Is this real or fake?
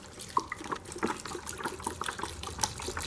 real